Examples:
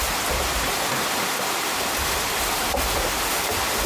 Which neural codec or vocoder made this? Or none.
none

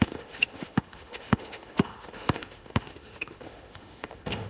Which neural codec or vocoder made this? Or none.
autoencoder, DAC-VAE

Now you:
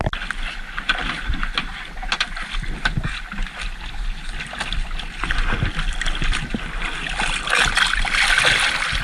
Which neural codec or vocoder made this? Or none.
none